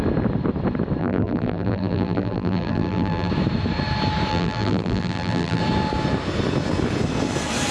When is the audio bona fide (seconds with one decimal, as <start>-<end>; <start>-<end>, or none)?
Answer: 0.0-1.0; 3.3-4.3; 5.6-7.7